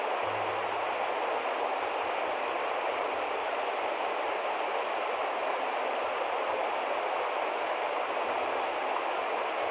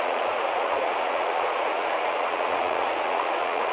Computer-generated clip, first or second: second